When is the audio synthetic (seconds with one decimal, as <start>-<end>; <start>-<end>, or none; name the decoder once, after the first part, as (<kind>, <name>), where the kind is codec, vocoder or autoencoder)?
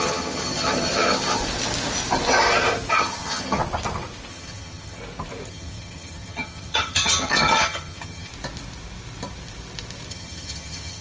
0.0-1.4 (vocoder, HiFi-GAN); 2.9-3.6; 4.3-5.0; 5.5-8.3; 10.1-11.0